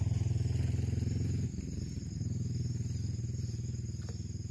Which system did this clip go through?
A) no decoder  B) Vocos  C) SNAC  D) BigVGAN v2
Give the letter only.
A